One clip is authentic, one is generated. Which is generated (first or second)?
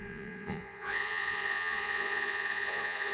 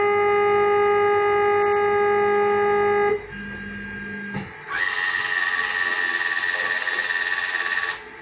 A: first